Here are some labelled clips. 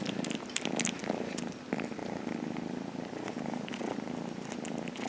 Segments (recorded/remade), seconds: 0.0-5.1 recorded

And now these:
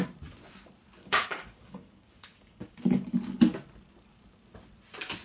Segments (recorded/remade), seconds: 0.0-1.0 recorded; 1.0-3.1 remade; 3.1-5.2 recorded

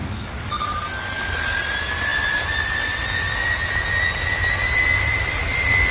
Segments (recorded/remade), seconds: 0.0-1.6 remade; 1.6-5.9 recorded

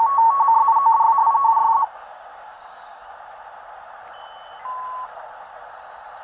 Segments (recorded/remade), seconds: 0.0-1.2 recorded; 1.2-3.2 remade; 3.2-6.2 recorded

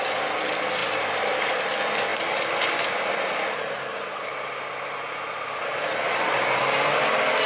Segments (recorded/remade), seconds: 0.0-7.5 recorded